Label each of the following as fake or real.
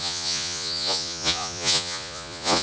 fake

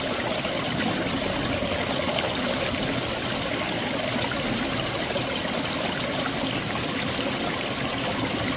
real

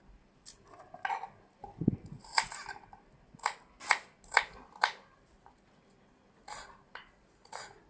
real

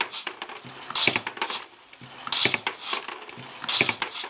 real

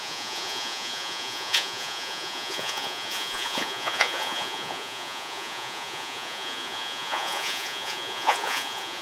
fake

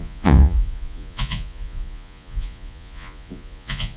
fake